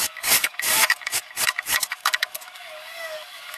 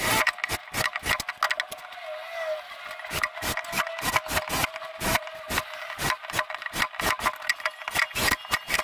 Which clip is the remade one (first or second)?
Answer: first